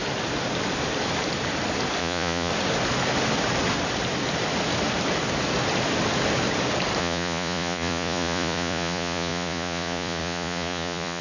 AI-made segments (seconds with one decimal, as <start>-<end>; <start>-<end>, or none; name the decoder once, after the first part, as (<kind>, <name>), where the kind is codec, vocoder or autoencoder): 2.0-2.5 (vocoder, Vocos); 7.0-11.2